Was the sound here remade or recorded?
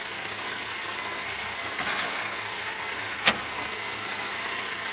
remade